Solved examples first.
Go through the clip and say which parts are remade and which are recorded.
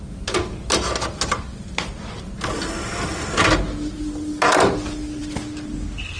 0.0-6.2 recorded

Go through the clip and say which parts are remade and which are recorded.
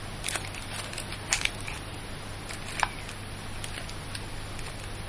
0.0-5.1 recorded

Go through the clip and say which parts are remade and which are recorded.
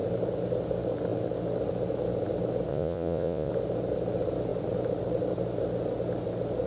0.0-2.7 recorded; 2.7-3.5 remade; 3.5-6.7 recorded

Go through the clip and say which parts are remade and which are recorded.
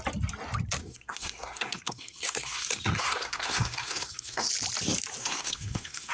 0.0-0.8 recorded; 0.8-4.5 remade; 4.5-5.2 recorded; 5.2-6.1 remade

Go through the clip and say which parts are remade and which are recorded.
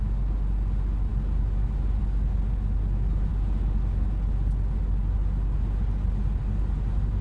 0.0-7.2 recorded